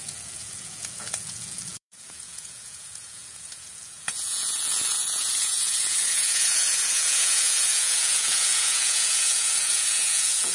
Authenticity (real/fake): fake